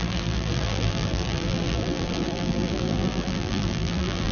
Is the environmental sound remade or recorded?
remade